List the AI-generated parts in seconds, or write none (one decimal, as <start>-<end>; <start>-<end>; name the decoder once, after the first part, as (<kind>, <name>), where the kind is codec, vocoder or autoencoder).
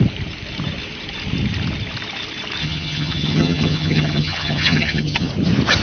2.6-5.3 (vocoder, HiFi-GAN)